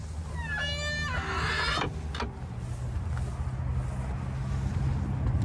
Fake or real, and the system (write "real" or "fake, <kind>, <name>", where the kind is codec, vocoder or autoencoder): real